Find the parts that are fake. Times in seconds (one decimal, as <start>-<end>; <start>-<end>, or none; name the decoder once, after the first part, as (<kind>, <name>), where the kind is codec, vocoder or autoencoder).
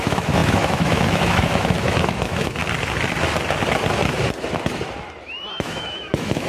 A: 0.0-2.6 (autoencoder, DAC-VAE); 5.5-6.5